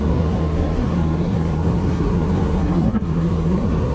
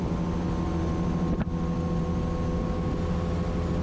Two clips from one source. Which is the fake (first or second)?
first